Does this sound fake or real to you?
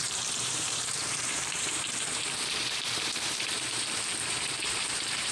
fake